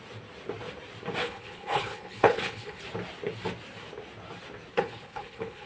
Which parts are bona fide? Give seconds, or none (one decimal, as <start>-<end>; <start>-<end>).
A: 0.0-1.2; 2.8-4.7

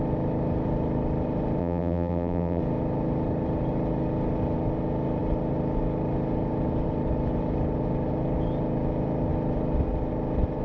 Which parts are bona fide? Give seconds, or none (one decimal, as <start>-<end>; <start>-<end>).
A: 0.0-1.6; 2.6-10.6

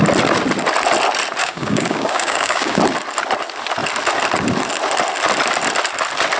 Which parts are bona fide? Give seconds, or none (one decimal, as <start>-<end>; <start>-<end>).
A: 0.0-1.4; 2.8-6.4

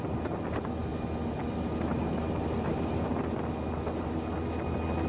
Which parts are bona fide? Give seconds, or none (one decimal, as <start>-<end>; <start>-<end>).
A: 0.0-5.1

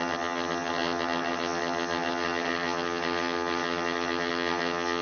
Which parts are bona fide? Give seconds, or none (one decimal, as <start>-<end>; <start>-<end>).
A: none